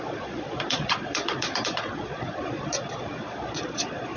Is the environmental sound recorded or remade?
remade